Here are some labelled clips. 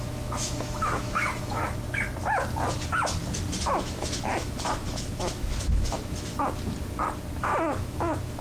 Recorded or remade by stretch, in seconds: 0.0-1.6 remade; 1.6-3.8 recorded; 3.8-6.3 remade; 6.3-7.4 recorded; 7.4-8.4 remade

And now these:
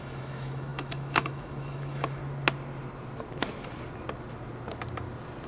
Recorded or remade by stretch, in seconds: 0.0-2.2 remade; 2.2-5.5 recorded

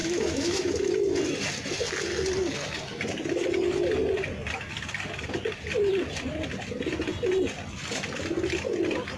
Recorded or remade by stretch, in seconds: 0.0-0.7 remade; 0.7-9.2 recorded

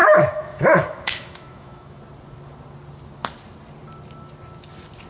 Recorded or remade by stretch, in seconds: 0.0-2.0 remade; 2.0-5.1 recorded

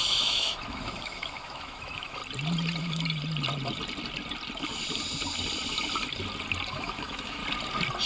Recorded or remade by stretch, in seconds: 0.0-2.2 remade; 2.2-6.7 recorded; 6.7-7.4 remade; 7.4-8.1 recorded

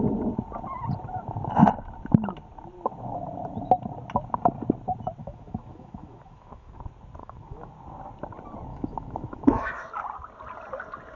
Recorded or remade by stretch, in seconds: 0.0-5.2 recorded; 5.2-6.8 remade; 6.8-7.2 recorded; 7.2-7.7 remade; 7.7-8.7 recorded; 8.7-9.9 remade; 9.9-11.2 recorded

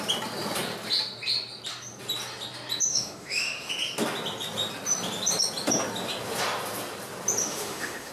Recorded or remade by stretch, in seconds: 0.0-2.9 recorded; 2.9-3.7 remade; 3.7-7.4 recorded; 7.4-8.1 remade

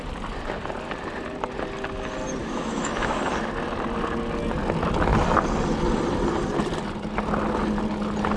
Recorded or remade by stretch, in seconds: 0.0-2.4 recorded; 2.4-3.2 remade; 3.2-8.4 recorded